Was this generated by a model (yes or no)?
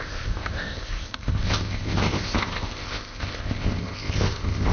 yes